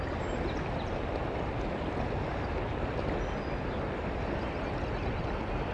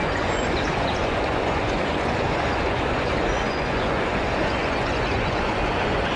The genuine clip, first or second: first